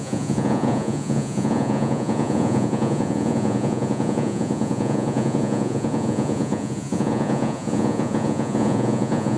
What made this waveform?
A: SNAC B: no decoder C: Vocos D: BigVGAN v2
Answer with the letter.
C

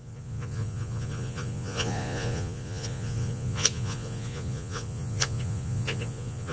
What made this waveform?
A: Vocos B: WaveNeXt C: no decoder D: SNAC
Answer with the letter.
A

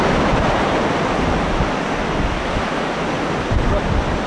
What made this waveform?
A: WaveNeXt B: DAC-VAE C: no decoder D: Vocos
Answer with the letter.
C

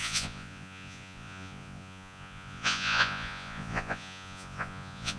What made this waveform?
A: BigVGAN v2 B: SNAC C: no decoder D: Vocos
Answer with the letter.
D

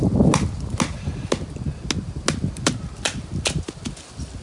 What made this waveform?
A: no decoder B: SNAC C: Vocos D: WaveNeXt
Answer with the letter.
A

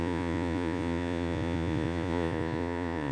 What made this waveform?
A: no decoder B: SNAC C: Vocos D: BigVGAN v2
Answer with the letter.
C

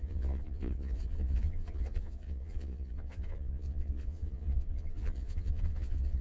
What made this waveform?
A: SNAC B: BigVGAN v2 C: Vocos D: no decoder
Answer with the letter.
C